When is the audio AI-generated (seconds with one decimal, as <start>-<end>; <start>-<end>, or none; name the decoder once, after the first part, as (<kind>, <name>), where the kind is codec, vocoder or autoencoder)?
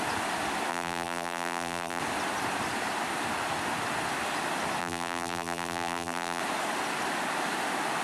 0.7-2.0 (vocoder, BigVGAN v2); 4.8-6.4